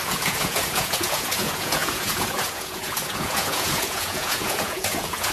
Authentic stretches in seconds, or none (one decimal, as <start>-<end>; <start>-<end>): none